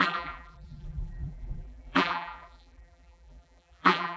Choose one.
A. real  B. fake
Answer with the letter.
B